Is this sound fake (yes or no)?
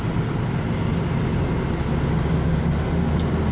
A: no